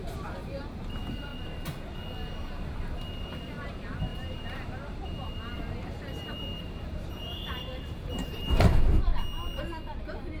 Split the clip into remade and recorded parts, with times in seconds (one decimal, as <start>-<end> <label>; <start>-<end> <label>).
0.0-1.3 remade; 1.3-2.6 recorded; 2.6-9.1 remade; 9.1-10.0 recorded; 10.0-10.4 remade